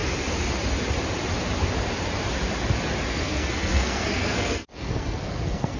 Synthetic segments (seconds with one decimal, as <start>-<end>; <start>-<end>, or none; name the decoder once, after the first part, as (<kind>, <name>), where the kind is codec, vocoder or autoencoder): 3.1-5.8 (codec, SNAC)